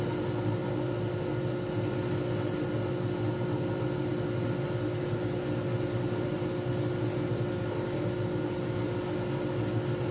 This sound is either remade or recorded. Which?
recorded